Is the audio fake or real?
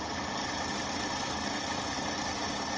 real